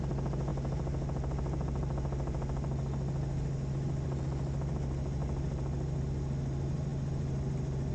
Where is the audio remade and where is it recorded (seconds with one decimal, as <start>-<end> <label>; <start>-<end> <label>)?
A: 0.0-7.9 recorded